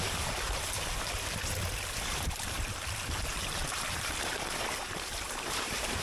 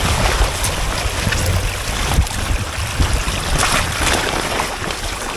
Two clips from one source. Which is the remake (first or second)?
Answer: first